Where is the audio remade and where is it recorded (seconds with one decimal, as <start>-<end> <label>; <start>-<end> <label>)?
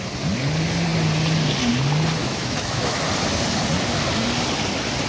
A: 0.0-2.2 recorded; 2.2-3.0 remade; 3.0-5.1 recorded